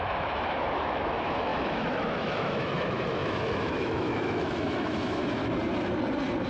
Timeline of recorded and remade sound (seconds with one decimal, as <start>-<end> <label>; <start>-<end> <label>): 0.0-5.4 remade; 5.4-6.5 recorded